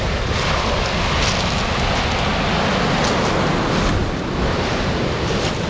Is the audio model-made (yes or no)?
no